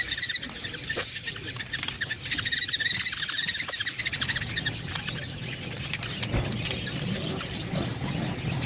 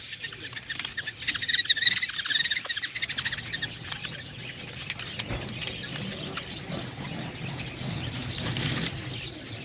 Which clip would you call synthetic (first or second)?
first